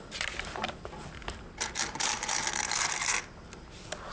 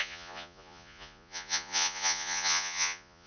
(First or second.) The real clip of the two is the first